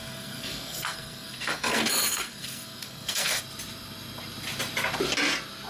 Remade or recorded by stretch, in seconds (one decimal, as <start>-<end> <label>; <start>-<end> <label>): 0.0-3.4 remade; 3.4-5.7 recorded